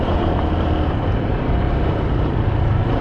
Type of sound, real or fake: fake